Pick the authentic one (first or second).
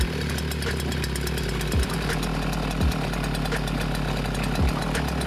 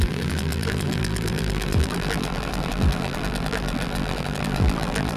first